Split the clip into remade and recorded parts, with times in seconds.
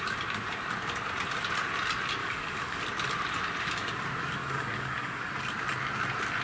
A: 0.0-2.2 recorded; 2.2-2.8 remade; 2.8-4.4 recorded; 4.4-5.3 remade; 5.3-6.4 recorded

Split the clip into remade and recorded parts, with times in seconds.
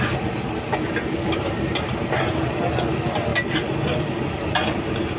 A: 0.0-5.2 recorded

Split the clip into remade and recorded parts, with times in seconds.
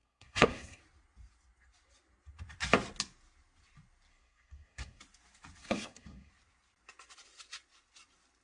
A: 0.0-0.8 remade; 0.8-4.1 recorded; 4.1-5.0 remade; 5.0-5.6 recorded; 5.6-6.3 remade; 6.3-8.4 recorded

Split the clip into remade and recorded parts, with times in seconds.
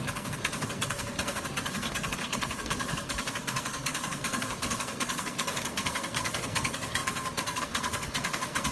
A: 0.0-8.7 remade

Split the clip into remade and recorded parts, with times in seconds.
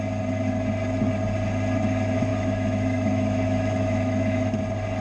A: 0.0-2.3 recorded; 2.3-4.6 remade; 4.6-5.0 recorded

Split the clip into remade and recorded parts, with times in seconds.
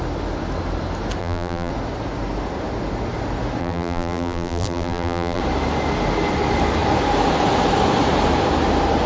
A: 0.0-1.2 recorded; 1.2-1.7 remade; 1.7-3.6 recorded; 3.6-5.4 remade; 5.4-9.1 recorded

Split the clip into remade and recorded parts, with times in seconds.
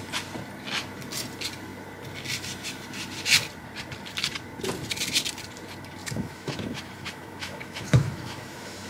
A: 0.0-6.0 recorded; 6.0-8.9 remade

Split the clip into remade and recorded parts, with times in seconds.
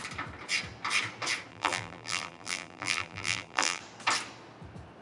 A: 0.0-1.5 recorded; 1.5-3.8 remade; 3.8-5.0 recorded